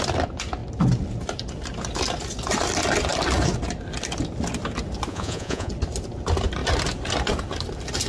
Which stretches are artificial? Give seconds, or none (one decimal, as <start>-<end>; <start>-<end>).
5.1-5.7